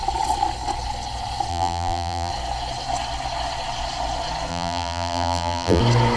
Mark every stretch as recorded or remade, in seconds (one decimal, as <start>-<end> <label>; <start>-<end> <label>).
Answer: 0.0-1.5 recorded; 1.5-2.3 remade; 2.3-4.5 recorded; 4.5-5.8 remade; 5.8-6.2 recorded